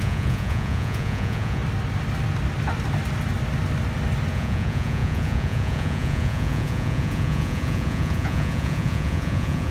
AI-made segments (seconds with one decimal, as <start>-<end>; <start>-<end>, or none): 0.0-1.6; 4.3-9.7